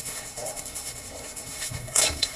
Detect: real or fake fake